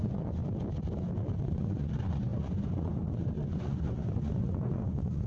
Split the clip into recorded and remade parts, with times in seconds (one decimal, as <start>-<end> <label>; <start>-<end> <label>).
0.0-0.4 remade; 0.4-1.4 recorded; 1.4-5.3 remade